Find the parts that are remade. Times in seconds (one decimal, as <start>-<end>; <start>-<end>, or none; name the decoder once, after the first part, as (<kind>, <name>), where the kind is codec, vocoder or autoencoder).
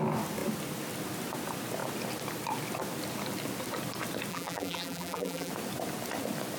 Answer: 4.3-5.5 (vocoder, BigVGAN v2)